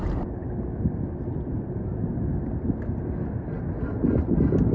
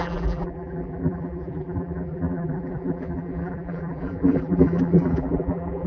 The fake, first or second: second